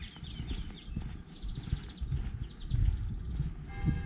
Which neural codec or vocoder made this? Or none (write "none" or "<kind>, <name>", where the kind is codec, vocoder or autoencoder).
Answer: none